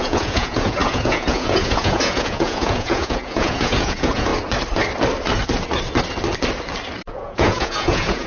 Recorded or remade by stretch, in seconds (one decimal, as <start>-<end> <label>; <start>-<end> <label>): 0.0-4.3 remade; 4.3-7.1 recorded; 7.1-8.3 remade